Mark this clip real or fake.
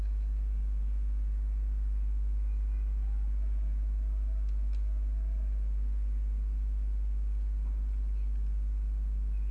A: real